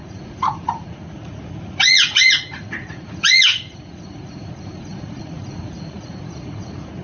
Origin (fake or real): fake